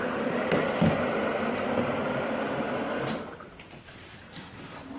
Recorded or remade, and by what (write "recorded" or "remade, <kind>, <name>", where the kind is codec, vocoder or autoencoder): recorded